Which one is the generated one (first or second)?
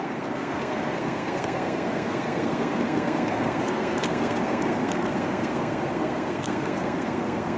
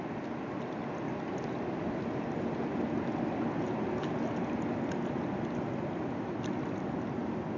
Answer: first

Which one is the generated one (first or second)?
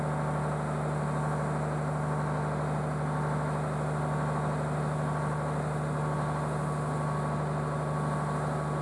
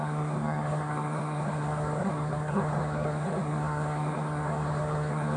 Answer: second